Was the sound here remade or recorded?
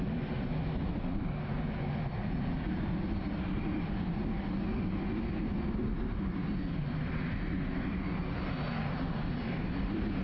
recorded